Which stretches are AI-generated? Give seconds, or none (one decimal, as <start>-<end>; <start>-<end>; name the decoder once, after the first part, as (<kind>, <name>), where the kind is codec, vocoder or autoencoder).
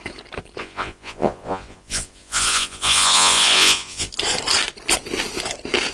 0.6-4.1 (vocoder, Vocos)